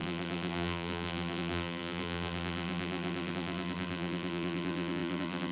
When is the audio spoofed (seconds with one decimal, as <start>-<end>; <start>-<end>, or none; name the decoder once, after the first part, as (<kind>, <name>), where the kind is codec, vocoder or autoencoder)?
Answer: 0.0-5.5 (vocoder, BigVGAN v2)